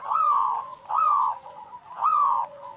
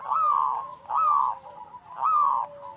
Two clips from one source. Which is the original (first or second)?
second